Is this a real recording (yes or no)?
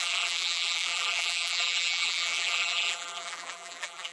no